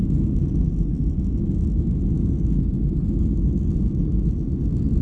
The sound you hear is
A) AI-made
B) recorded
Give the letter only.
B